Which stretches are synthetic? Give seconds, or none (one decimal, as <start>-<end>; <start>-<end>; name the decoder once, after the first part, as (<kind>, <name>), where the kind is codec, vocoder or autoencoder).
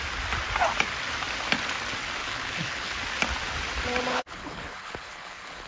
2.2-3.0 (codec, HILCodec); 4.1-5.7